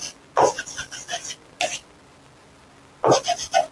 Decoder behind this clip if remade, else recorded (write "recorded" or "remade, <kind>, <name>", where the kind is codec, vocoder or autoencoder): recorded